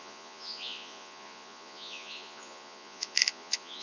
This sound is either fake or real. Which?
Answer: fake